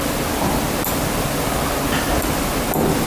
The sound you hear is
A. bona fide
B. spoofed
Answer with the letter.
A